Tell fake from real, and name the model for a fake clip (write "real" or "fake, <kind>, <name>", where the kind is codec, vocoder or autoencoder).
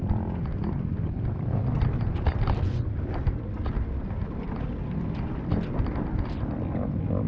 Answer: real